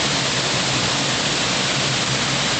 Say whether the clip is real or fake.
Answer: real